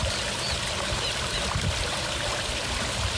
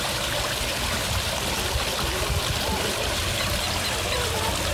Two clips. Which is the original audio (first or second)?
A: second